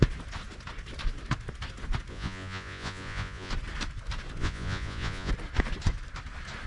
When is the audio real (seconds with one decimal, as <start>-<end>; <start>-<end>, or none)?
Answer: 0.0-2.1; 3.5-4.4; 5.3-6.7

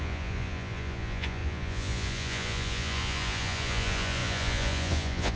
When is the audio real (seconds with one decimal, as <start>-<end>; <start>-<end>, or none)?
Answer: none